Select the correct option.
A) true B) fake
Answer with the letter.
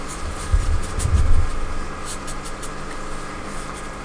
A